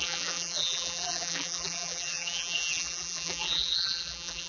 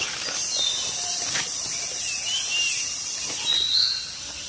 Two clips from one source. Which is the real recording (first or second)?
second